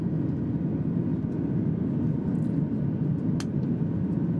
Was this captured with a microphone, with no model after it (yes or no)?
yes